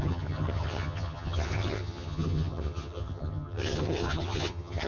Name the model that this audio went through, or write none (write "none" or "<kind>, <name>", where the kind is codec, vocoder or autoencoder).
vocoder, HiFi-GAN